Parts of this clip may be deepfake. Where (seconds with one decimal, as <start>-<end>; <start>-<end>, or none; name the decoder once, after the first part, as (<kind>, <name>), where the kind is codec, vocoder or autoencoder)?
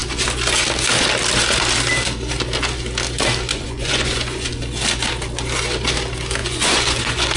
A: 3.5-4.6 (vocoder, Vocos); 6.4-7.4